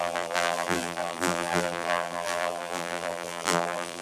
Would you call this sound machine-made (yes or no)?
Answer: yes